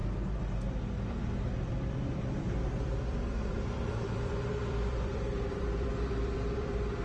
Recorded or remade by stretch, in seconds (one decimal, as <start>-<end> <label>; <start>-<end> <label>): 0.0-1.6 recorded; 1.6-7.0 remade